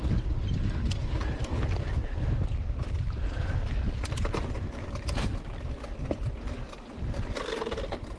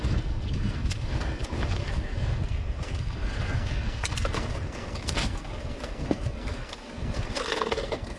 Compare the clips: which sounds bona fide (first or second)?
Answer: first